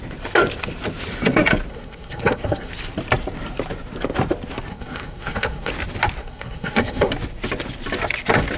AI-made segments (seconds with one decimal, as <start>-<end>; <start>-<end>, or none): 1.7-2.7; 4.7-5.7; 6.2-7.1